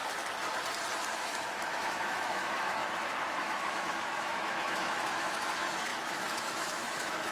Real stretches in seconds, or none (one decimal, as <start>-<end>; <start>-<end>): 0.0-1.0